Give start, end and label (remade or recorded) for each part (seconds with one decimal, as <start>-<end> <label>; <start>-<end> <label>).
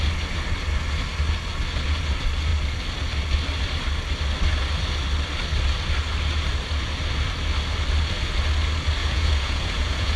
0.0-9.0 recorded; 9.0-10.2 remade